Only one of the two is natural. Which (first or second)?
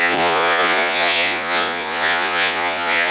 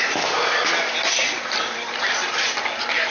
second